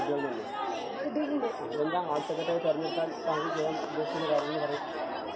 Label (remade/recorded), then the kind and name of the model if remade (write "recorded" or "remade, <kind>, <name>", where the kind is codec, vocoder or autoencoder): recorded